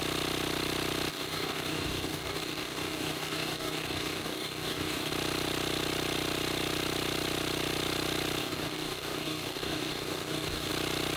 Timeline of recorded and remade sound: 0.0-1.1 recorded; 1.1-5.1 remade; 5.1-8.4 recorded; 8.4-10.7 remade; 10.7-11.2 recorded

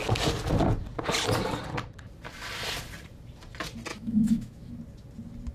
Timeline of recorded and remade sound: 0.0-3.9 recorded; 3.9-4.7 remade; 4.7-5.5 recorded